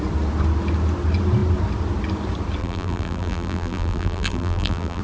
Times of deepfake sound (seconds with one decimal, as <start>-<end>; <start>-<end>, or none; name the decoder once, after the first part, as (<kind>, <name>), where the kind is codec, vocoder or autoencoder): 2.6-5.0 (vocoder, BigVGAN v2)